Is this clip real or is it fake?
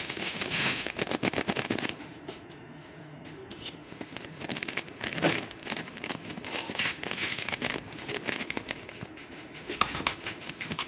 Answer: fake